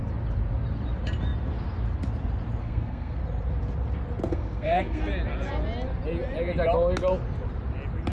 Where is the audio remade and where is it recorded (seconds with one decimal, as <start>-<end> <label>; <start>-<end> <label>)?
0.0-2.6 recorded; 2.6-3.2 remade; 3.2-4.3 recorded; 4.3-5.0 remade; 5.0-8.1 recorded